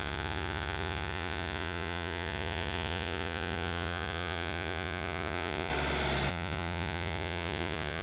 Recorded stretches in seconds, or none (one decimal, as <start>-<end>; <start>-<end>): 5.7-6.3